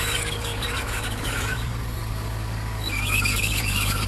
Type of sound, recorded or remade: remade